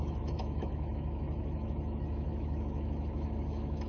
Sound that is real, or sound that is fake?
fake